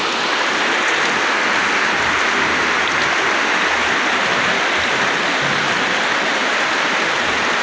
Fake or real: real